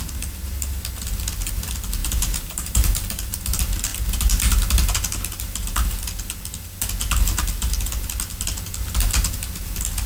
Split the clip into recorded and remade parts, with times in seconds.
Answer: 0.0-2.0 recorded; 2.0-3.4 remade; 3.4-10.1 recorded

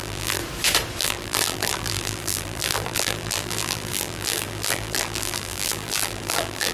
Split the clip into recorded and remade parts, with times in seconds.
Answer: 0.0-0.4 remade; 0.4-1.0 recorded; 1.0-6.7 remade

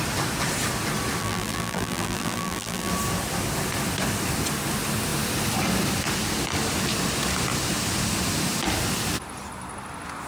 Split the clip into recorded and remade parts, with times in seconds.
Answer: 0.0-1.2 recorded; 1.2-2.9 remade; 2.9-10.3 recorded

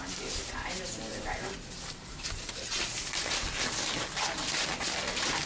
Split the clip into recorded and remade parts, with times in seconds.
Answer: 0.0-1.1 recorded; 1.1-2.8 remade; 2.8-5.5 recorded

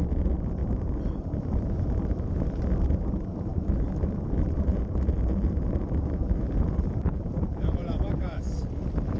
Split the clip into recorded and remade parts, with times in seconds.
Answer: 0.0-0.6 recorded; 0.6-2.6 remade; 2.6-3.5 recorded; 3.5-8.4 remade; 8.4-9.2 recorded

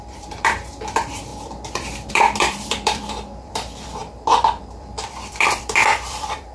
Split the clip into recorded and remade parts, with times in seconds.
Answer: 0.0-4.0 remade; 4.0-4.6 recorded; 4.6-6.5 remade